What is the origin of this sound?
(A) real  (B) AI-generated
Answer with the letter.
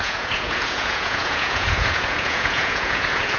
B